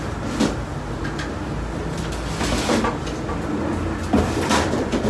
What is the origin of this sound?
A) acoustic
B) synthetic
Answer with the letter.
A